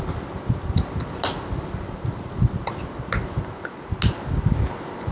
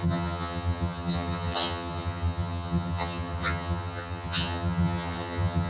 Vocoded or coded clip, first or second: second